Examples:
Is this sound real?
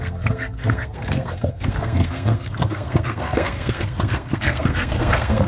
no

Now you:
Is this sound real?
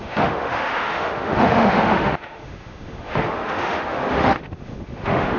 no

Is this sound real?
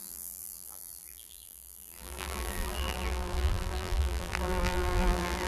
no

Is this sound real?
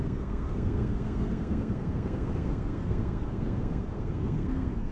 no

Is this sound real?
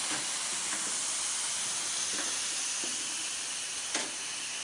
yes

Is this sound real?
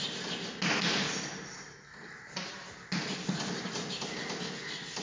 yes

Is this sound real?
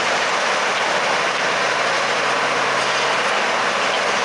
yes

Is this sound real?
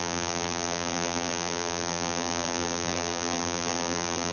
no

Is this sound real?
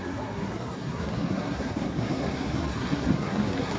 no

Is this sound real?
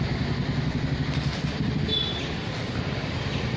yes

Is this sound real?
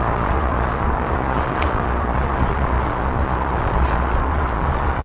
no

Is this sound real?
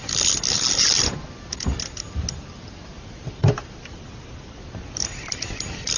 yes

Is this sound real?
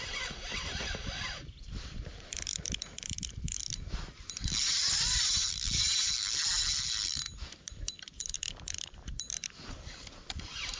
no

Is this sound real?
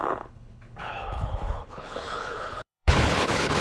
no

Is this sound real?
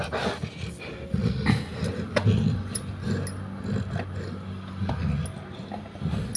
yes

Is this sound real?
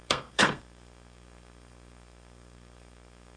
no